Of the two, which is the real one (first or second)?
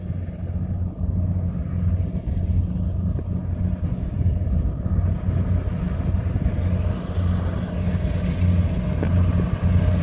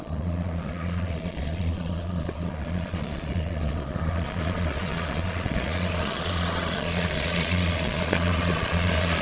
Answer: first